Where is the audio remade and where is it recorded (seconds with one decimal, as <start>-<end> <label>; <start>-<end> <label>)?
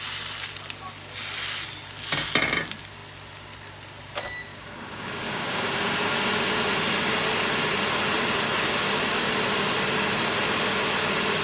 0.0-4.5 recorded; 4.5-5.6 remade; 5.6-11.4 recorded